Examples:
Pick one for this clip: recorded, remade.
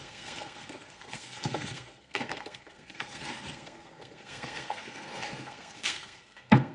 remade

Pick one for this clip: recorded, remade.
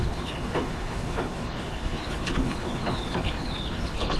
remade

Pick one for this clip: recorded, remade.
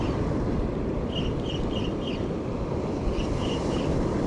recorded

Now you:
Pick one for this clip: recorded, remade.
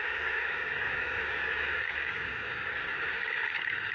remade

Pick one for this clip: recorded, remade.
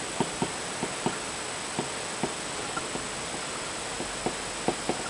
recorded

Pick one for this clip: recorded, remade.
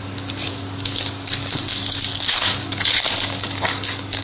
remade